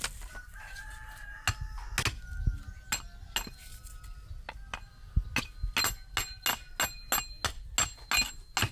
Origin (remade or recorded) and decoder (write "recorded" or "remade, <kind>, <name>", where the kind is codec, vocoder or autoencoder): recorded